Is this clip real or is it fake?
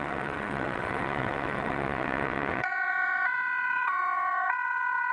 fake